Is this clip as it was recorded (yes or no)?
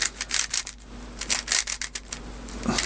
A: yes